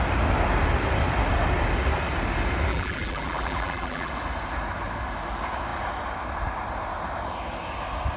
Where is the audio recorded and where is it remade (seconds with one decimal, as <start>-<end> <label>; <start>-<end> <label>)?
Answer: 0.0-2.7 recorded; 2.7-4.1 remade; 4.1-8.2 recorded